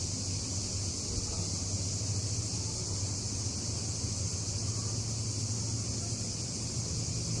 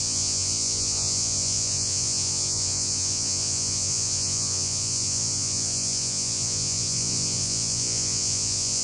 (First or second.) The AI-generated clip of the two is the second